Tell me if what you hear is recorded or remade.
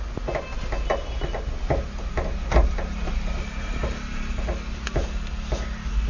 recorded